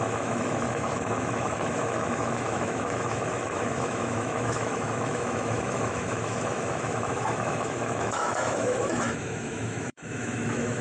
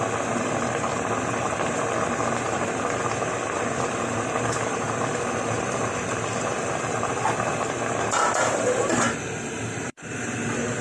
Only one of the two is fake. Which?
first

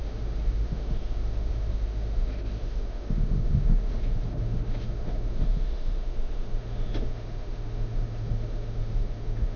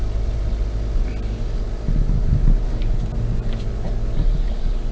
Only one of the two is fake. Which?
first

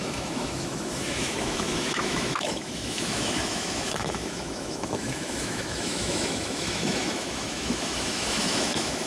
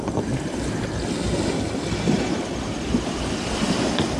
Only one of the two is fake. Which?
first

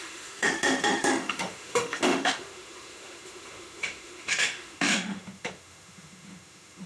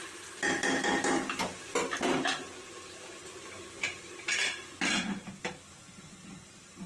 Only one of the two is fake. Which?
first